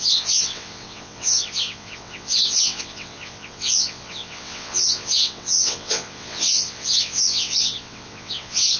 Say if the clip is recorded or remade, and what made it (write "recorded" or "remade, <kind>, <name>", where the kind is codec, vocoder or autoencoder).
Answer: remade, vocoder, WaveNeXt